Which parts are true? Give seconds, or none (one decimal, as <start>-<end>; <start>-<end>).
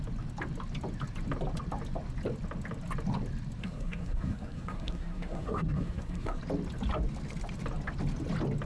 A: 0.0-3.6; 6.4-8.7